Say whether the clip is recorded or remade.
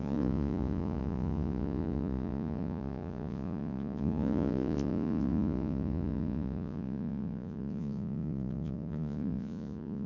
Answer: remade